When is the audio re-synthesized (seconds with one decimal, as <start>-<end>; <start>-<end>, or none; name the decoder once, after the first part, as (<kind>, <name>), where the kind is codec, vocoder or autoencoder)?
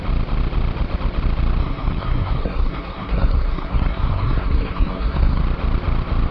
1.6-5.4 (codec, SNAC)